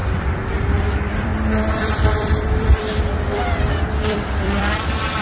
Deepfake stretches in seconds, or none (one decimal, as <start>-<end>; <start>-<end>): 0.0-5.2